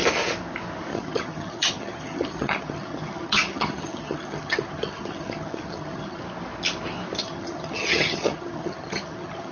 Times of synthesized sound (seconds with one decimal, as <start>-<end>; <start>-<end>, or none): 0.9-6.2; 7.2-9.5